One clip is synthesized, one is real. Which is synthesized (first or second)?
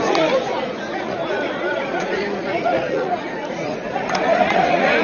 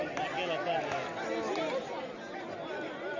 first